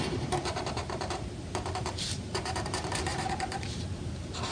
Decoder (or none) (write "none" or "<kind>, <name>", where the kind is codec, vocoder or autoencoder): vocoder, BigVGAN v2